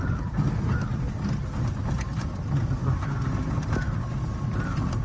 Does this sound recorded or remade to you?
recorded